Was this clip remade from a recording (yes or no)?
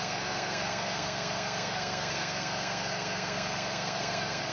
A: yes